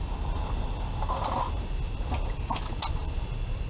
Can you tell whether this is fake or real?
real